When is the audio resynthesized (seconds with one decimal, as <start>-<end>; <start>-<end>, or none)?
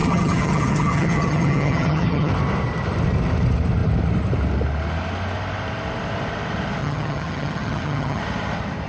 0.0-2.3; 6.8-8.2